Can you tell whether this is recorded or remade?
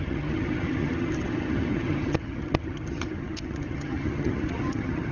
remade